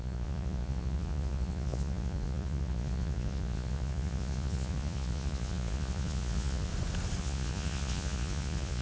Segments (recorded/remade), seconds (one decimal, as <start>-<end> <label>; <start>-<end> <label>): 0.0-6.7 remade; 6.7-7.2 recorded; 7.2-8.8 remade

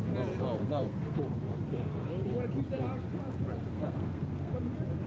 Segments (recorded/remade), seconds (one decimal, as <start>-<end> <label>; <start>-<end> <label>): 0.0-0.6 recorded; 0.6-1.2 remade; 1.2-3.6 recorded; 3.6-4.5 remade; 4.5-5.1 recorded

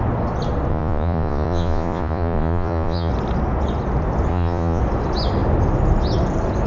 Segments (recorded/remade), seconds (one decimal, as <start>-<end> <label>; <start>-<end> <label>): 0.0-0.7 recorded; 0.7-3.1 remade; 3.1-4.3 recorded; 4.3-4.8 remade; 4.8-6.7 recorded